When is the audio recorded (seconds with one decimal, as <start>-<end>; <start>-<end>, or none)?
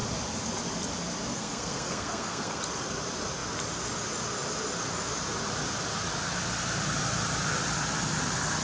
0.0-1.3; 2.6-8.6